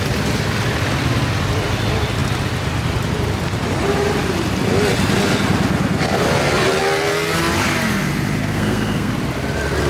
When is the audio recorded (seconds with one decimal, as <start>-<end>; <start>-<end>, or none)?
0.0-8.4; 9.1-9.9